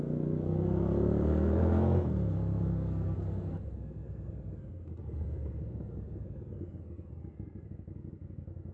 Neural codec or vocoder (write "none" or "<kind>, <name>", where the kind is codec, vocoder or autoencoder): codec, SNAC